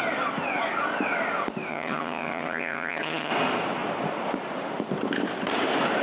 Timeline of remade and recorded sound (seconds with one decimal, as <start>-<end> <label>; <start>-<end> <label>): 0.0-1.7 recorded; 1.7-3.3 remade; 3.3-6.0 recorded